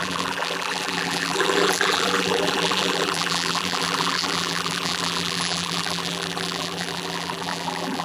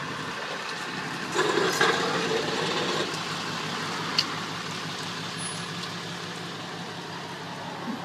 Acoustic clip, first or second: second